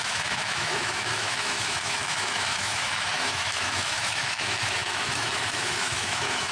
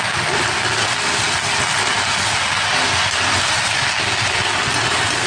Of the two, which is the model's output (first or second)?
first